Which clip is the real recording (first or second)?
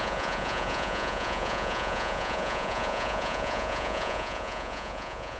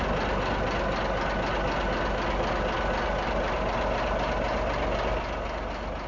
second